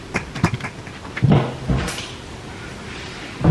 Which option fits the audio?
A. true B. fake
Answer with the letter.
A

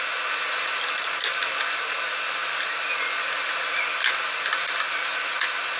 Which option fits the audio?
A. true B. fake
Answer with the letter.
A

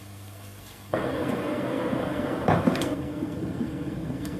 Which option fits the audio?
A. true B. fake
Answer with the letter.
B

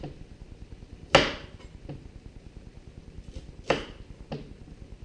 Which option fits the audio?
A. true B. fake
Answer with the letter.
A